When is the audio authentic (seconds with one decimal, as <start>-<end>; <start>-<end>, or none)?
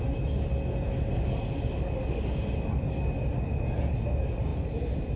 0.0-4.5